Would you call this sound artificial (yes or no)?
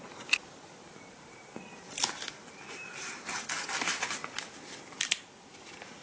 no